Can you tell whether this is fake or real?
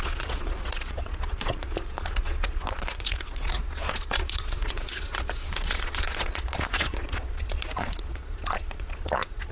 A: fake